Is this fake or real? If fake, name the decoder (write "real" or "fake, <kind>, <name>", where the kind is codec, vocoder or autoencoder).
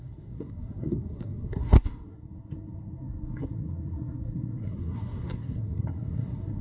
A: fake, codec, SNAC